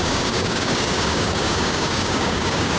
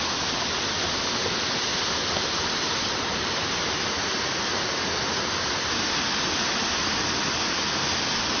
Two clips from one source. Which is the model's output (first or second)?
first